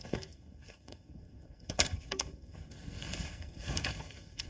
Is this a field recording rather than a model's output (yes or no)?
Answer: no